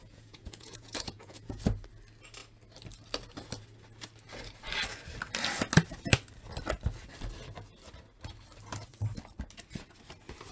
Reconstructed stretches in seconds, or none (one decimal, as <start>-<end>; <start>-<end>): 0.0-1.6